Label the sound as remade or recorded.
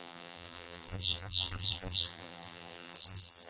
remade